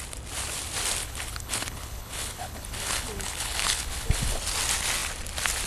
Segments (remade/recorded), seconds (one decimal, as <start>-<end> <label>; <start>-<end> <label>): 0.0-1.0 recorded; 1.0-4.4 remade; 4.4-5.7 recorded